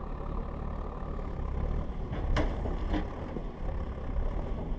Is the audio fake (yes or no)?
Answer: no